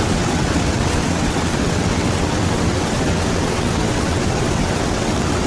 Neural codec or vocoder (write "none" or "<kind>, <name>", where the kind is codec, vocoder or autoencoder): vocoder, WaveNeXt